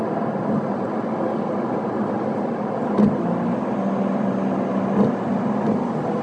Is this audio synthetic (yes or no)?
no